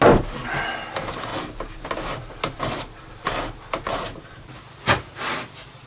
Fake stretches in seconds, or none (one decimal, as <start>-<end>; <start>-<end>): none